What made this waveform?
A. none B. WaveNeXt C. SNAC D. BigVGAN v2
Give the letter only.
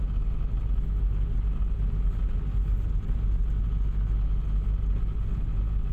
A